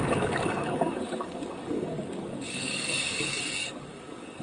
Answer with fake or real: fake